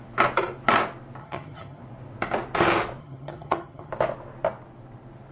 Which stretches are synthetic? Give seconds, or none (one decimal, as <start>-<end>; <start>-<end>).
1.2-1.8; 3.0-3.9